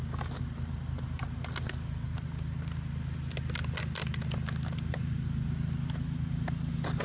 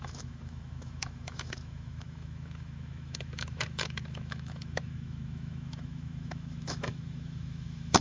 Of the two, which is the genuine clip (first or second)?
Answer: first